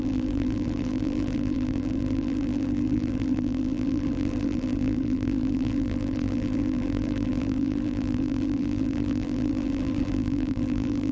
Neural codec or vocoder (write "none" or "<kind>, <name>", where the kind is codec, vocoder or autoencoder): vocoder, BigVGAN v2